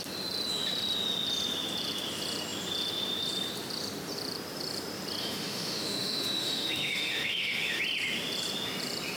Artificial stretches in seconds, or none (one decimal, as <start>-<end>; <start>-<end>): 5.2-7.8